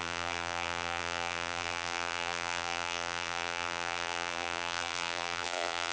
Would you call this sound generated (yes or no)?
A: yes